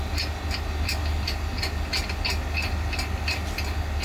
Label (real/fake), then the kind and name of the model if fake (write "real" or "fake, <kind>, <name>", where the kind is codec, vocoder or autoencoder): real